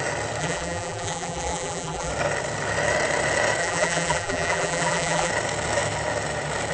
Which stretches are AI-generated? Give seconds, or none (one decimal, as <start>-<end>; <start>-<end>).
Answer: 0.4-2.1; 3.6-5.3